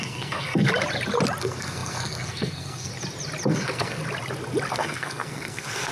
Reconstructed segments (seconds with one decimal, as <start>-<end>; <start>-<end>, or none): 0.0-0.7; 1.4-2.9; 3.5-4.0; 4.7-5.9